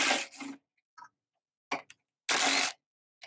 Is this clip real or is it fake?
real